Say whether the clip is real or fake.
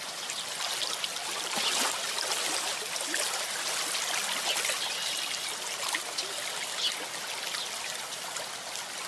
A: real